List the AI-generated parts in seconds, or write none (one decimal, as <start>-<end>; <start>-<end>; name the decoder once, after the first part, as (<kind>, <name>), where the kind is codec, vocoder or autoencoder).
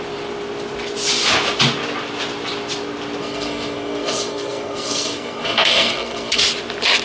3.2-6.4 (codec, SNAC)